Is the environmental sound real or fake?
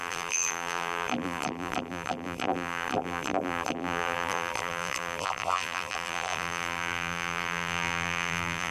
fake